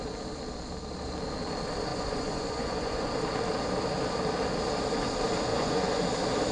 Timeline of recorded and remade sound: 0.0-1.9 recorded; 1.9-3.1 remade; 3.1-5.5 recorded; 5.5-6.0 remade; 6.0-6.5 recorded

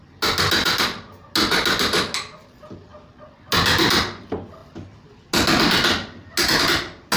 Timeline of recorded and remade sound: 0.0-7.2 recorded